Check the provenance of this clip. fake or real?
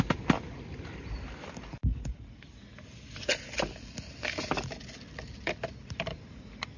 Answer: real